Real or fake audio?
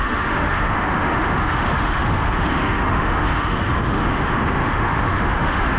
fake